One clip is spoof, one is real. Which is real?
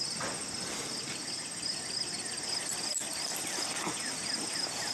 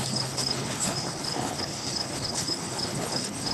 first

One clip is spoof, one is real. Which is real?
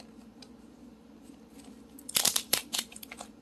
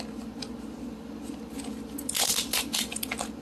second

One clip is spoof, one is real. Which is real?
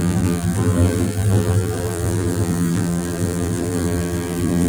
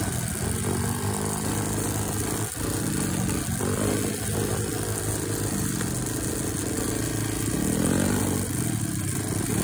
second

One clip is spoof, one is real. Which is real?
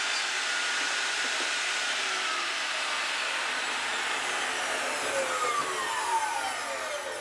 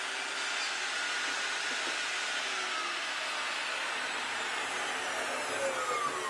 second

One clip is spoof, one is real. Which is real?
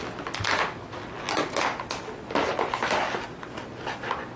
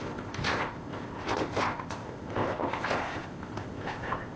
first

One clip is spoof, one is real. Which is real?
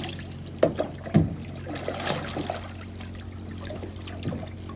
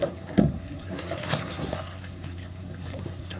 first